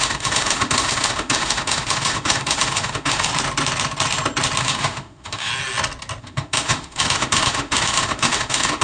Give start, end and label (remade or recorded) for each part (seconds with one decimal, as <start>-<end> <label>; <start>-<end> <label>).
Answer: 0.0-3.3 remade; 3.3-4.6 recorded; 4.6-5.5 remade; 5.5-6.2 recorded; 6.2-8.8 remade